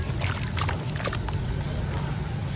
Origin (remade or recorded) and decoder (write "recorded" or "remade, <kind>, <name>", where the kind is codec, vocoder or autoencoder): recorded